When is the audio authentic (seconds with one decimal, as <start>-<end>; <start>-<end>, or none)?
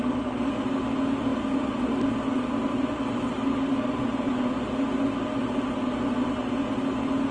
0.0-7.3